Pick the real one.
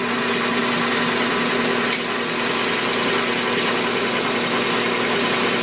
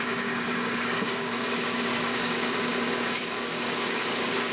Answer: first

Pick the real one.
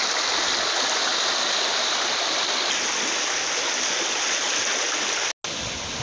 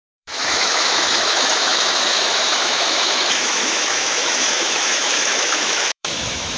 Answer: first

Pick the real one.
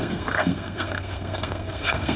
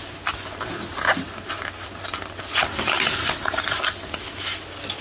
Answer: second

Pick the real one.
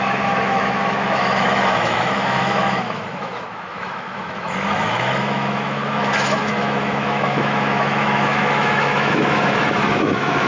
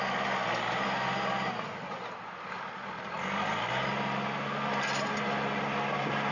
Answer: second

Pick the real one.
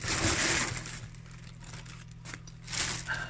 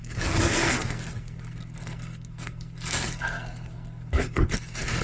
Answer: first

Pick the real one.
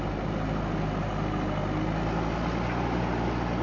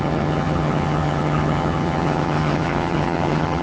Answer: first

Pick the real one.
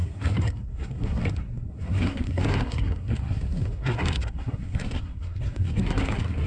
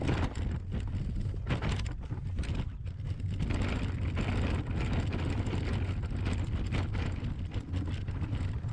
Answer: second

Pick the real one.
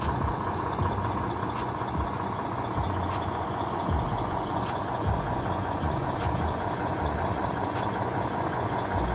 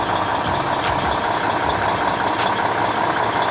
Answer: second